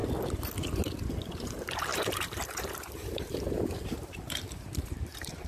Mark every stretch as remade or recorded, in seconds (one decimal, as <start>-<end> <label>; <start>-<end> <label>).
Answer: 0.0-1.4 recorded; 1.4-5.5 remade